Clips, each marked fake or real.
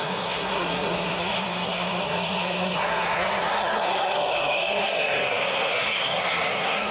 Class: fake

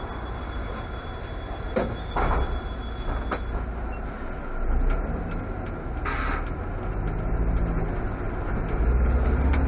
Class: real